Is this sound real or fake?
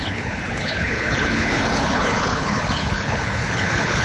fake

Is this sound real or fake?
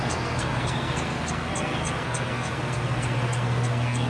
fake